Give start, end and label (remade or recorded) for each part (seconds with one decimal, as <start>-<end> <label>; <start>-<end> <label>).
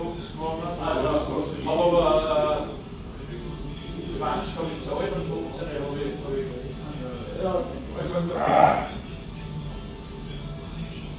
0.0-0.9 recorded; 0.9-1.8 remade; 1.8-7.7 recorded; 7.7-9.1 remade; 9.1-11.2 recorded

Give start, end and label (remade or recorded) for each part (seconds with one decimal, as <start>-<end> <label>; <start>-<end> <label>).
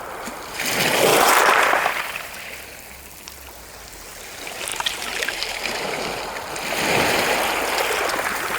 0.0-1.1 recorded; 1.1-2.3 remade; 2.3-4.7 recorded; 4.7-6.2 remade; 6.2-8.6 recorded